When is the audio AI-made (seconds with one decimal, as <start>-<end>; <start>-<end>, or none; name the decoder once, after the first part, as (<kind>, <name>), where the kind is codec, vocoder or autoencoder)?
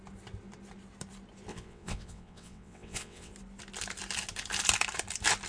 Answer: 1.5-3.3 (vocoder, WaveNeXt)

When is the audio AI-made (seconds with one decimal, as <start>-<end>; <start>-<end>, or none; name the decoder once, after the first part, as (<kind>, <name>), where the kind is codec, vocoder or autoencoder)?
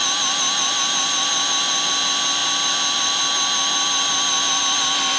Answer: 0.0-5.2 (vocoder, BigVGAN v2)